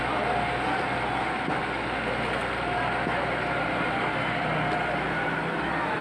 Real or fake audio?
real